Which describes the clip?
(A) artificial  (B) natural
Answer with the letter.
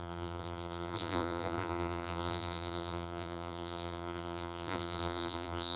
A